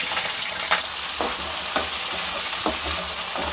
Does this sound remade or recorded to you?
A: recorded